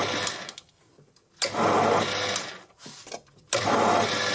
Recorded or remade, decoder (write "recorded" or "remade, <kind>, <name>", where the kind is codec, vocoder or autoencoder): recorded